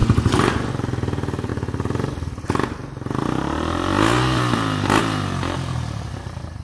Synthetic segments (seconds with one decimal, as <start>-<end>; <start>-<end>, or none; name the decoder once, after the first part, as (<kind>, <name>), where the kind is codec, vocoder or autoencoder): 0.0-0.7 (vocoder, Vocos)